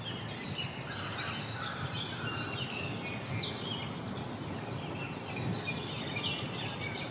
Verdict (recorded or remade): recorded